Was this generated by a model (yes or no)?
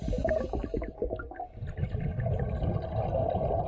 no